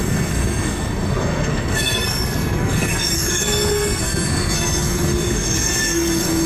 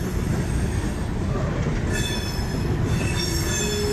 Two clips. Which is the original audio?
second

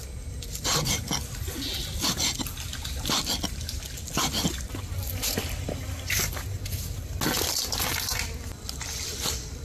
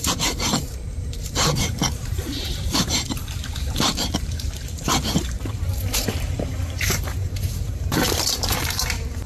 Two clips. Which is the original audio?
first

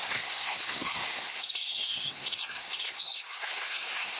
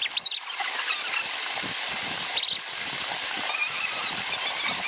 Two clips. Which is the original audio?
second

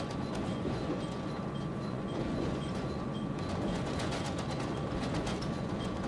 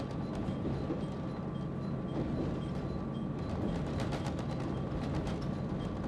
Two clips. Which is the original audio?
second